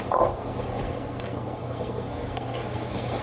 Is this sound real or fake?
fake